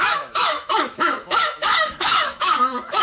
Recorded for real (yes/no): no